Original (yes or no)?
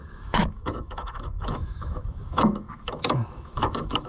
no